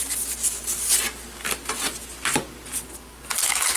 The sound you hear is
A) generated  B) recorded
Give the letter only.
B